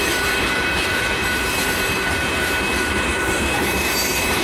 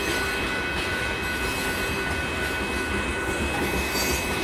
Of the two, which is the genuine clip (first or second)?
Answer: second